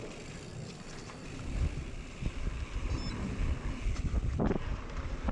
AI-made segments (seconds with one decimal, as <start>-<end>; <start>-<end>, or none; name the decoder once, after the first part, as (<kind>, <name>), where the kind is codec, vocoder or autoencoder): none